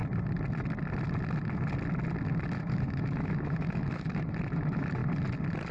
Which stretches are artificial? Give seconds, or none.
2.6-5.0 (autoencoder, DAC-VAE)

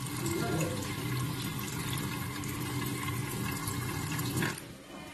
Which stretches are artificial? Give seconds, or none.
none

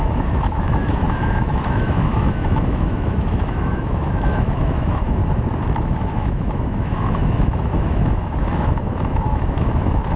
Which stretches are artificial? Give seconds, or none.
0.0-5.2 (autoencoder, DAC-VAE); 5.8-10.2

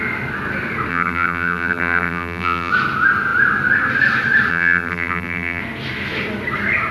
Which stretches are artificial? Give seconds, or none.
0.9-2.7 (vocoder, BigVGAN v2); 4.5-5.6

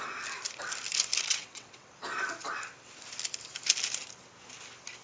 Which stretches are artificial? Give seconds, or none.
1.4-1.9 (vocoder, WaveNeXt)

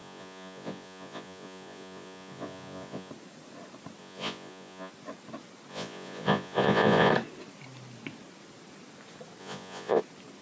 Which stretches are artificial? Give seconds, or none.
0.0-3.1 (vocoder, Vocos); 4.0-4.9; 5.7-7.1; 9.4-10.0

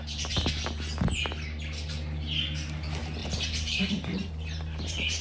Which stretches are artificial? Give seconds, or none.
3.2-5.2 (vocoder, BigVGAN v2)